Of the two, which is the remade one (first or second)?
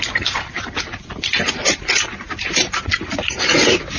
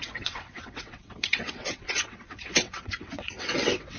second